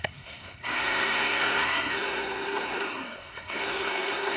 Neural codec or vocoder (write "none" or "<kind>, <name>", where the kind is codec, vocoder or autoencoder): codec, SNAC